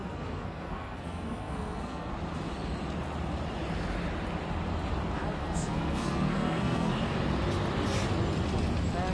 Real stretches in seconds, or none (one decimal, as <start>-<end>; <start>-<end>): 2.1-5.4; 6.9-9.1